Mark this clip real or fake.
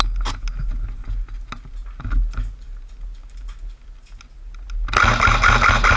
real